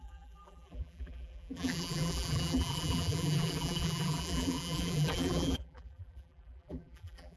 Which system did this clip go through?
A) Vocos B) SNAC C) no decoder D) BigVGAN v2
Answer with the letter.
D